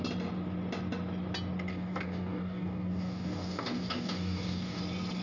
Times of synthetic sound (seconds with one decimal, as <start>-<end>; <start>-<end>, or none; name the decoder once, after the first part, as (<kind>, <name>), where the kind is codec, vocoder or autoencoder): 1.7-4.8 (codec, DAC)